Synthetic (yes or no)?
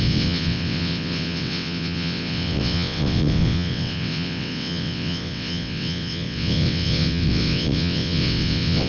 yes